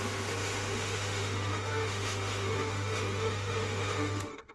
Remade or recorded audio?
remade